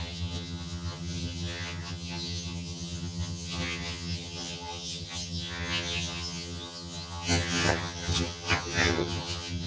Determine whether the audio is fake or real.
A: fake